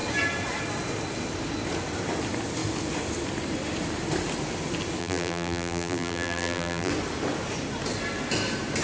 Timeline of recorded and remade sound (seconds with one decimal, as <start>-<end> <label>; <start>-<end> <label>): 0.0-5.0 recorded; 5.0-6.9 remade; 6.9-8.8 recorded